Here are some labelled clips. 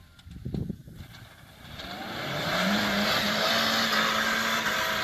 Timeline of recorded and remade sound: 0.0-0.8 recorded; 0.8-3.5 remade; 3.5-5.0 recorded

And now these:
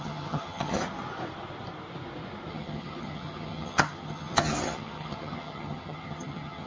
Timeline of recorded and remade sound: 0.0-0.8 remade; 0.8-2.5 recorded; 2.5-6.7 remade

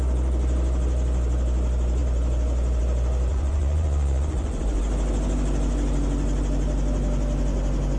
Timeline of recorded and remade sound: 0.0-3.3 recorded; 3.3-4.8 remade; 4.8-8.0 recorded

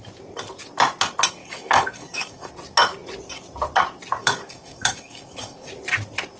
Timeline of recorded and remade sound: 0.0-1.4 recorded; 1.4-2.5 remade; 2.5-4.2 recorded; 4.2-5.7 remade; 5.7-6.4 recorded

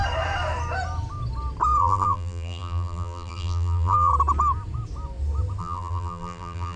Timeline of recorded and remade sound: 0.0-1.8 recorded; 1.8-4.1 remade; 4.1-5.6 recorded; 5.6-6.8 remade

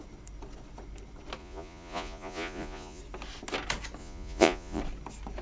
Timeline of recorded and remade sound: 0.0-1.4 recorded; 1.4-3.0 remade; 3.0-4.0 recorded; 4.0-4.8 remade; 4.8-5.4 recorded

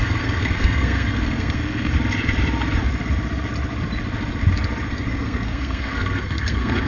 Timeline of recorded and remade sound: 0.0-1.9 remade; 1.9-4.9 recorded; 4.9-6.9 remade

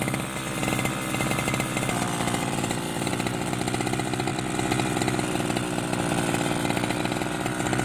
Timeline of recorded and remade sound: 0.0-7.8 recorded